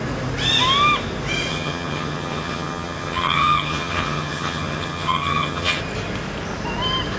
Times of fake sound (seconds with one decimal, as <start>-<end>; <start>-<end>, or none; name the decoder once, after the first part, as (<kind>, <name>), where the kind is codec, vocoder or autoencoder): 1.5-5.8 (vocoder, HiFi-GAN)